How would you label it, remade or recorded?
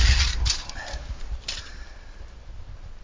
recorded